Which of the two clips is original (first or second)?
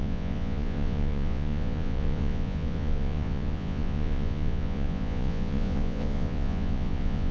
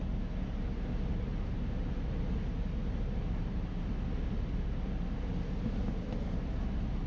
second